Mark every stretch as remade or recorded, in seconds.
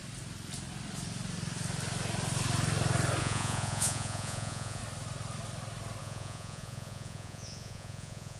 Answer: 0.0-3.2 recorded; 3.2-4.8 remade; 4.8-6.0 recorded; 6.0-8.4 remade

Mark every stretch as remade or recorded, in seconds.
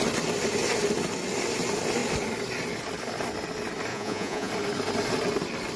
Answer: 0.0-3.9 recorded; 3.9-4.5 remade; 4.5-5.8 recorded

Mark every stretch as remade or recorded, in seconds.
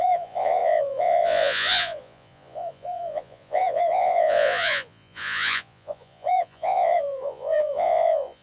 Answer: 0.0-8.4 remade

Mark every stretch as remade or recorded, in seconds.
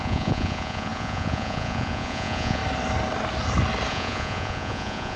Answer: 0.0-2.6 remade; 2.6-3.9 recorded; 3.9-5.2 remade